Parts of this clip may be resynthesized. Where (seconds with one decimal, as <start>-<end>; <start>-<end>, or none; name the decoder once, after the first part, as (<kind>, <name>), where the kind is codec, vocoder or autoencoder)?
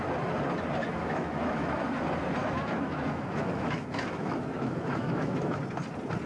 0.8-1.8 (autoencoder, DAC-VAE); 2.4-5.6